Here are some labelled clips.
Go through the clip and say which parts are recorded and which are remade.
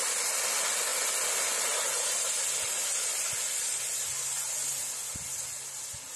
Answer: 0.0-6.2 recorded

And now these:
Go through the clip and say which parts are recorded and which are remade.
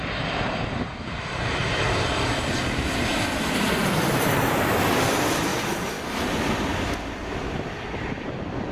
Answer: 0.0-0.9 recorded; 0.9-5.5 remade; 5.5-6.2 recorded; 6.2-8.7 remade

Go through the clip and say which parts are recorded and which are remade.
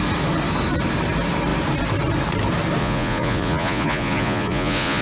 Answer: 0.0-2.8 recorded; 2.8-5.0 remade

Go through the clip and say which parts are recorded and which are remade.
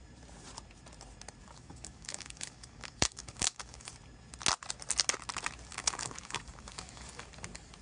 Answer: 0.0-1.4 recorded; 1.4-3.9 remade; 3.9-5.7 recorded; 5.7-7.3 remade; 7.3-7.8 recorded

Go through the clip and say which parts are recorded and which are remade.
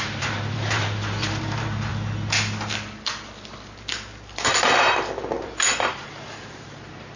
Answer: 0.0-1.9 remade; 1.9-5.9 recorded; 5.9-7.2 remade